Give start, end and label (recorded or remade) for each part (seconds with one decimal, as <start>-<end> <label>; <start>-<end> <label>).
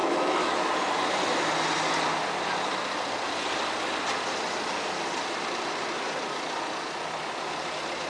0.0-0.6 remade; 0.6-8.1 recorded